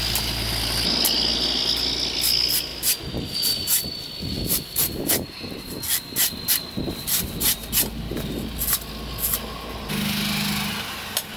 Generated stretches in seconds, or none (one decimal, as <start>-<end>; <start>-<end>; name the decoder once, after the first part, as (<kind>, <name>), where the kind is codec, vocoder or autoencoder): none